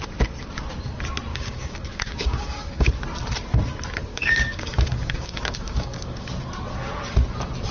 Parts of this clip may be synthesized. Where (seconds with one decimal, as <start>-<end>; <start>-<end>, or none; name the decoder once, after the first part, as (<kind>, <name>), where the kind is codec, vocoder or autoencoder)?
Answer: 1.3-2.9 (codec, DAC); 4.1-6.3